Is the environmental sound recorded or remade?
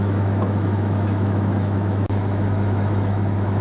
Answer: remade